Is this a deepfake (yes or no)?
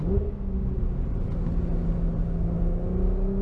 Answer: no